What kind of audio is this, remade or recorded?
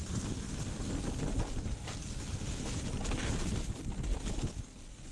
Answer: recorded